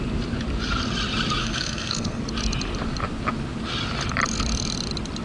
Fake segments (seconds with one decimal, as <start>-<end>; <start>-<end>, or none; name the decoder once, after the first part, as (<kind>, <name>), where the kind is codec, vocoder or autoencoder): 1.4-2.2 (codec, SNAC)